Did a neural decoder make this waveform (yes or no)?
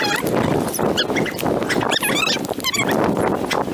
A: no